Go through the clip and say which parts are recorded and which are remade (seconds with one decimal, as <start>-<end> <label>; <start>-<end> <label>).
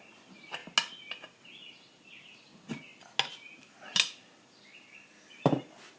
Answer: 0.0-6.0 recorded